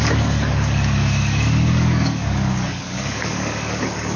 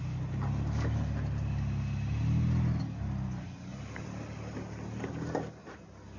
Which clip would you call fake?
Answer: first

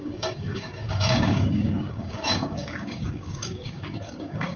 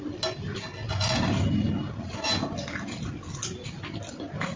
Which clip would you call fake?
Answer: first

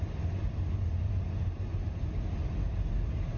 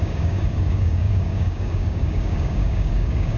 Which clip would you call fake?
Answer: second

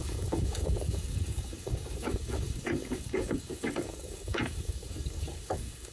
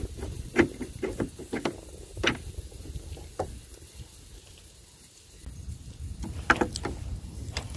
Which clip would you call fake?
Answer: first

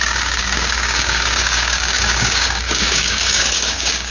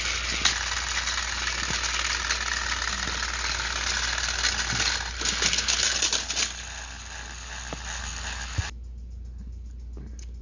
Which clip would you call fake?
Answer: first